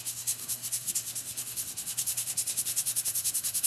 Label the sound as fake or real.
fake